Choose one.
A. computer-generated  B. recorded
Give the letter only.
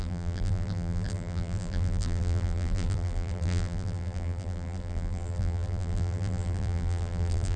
A